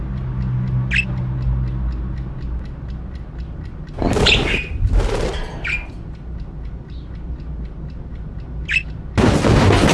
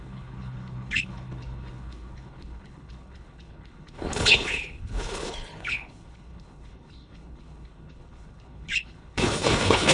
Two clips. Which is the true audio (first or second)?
first